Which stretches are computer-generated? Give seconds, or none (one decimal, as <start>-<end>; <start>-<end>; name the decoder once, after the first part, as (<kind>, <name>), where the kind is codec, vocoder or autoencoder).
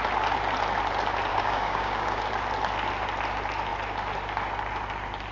1.3-2.2 (codec, DAC)